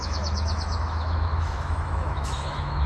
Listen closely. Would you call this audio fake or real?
fake